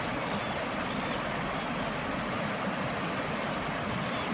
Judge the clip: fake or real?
real